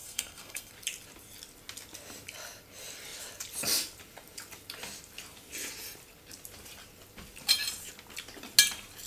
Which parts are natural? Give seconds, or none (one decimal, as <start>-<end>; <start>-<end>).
0.7-9.1